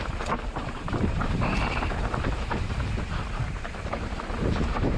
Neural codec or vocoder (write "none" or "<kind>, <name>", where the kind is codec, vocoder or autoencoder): vocoder, BigVGAN v2